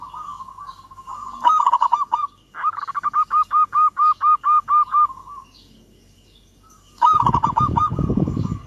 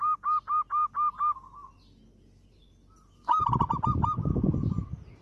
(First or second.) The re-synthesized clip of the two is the first